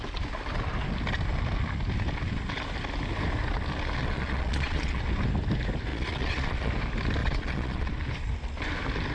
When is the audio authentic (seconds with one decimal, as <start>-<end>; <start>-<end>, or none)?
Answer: 0.0-4.0; 5.0-5.9; 6.7-7.2; 7.9-9.1